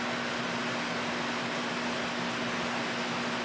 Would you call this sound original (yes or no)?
yes